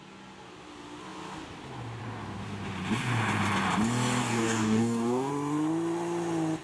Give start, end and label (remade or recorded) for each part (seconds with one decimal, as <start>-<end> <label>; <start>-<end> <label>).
0.0-4.2 recorded; 4.2-5.3 remade; 5.3-6.6 recorded